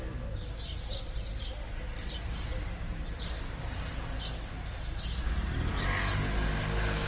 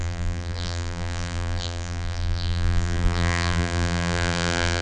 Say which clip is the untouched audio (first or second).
first